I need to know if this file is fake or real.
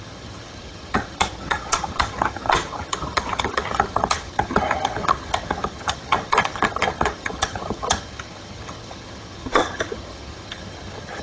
fake